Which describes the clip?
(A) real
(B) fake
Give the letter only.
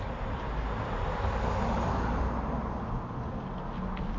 A